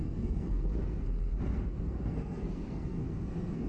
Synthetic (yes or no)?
yes